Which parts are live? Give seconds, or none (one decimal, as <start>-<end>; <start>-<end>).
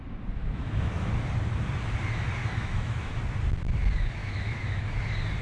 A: 0.0-0.4; 1.1-2.4; 3.2-4.2; 4.8-5.4